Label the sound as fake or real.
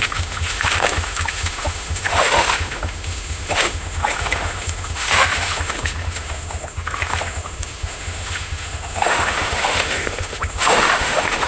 fake